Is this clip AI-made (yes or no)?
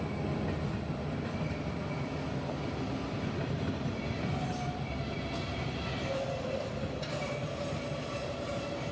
no